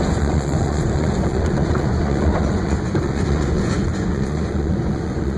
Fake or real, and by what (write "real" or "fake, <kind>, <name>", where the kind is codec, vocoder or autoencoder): fake, vocoder, Vocos